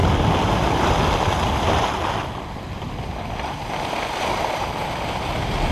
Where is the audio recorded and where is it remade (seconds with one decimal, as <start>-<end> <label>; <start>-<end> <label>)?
0.0-5.7 recorded

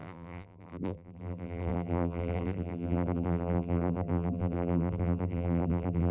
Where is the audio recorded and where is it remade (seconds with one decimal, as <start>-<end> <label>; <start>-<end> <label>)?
0.0-6.1 remade